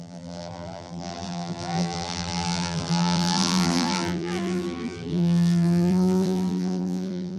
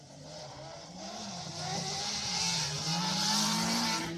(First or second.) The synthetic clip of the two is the first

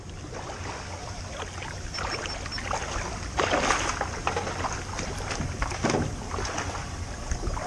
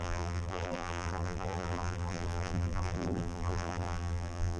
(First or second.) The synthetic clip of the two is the second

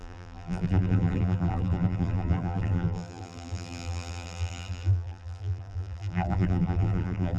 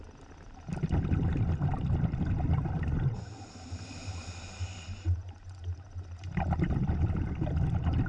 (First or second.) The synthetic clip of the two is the first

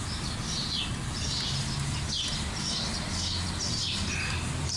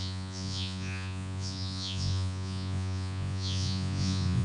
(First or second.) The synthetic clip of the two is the second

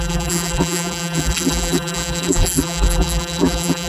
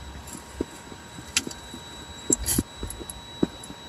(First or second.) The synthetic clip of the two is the first